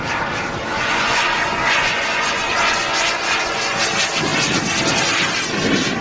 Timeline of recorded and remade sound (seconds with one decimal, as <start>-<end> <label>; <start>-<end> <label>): 0.0-0.7 recorded; 0.7-3.8 remade; 3.8-6.0 recorded